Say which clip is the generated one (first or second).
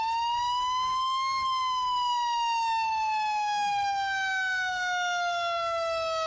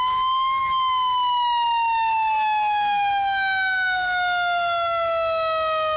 first